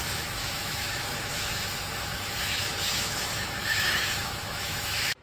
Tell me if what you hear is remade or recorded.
remade